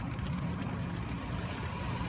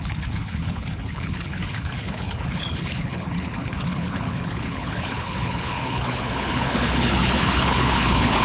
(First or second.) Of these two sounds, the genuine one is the first